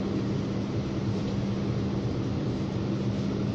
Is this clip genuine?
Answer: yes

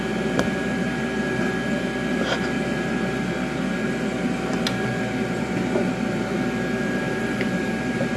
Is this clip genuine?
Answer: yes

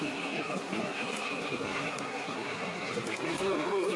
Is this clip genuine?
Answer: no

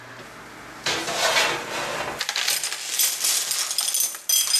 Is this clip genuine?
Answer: yes